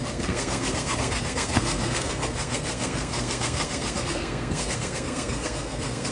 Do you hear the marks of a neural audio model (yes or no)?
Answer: yes